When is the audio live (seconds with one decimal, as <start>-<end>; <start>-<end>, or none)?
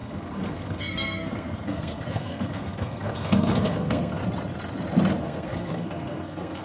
4.2-5.2